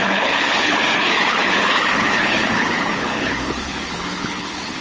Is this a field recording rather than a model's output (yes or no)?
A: no